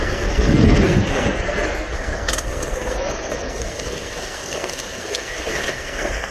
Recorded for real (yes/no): no